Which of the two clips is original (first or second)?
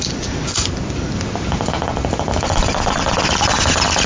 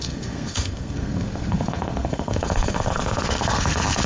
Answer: first